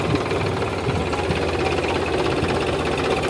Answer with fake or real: real